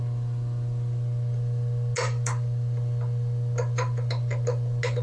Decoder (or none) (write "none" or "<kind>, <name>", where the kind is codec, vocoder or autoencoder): none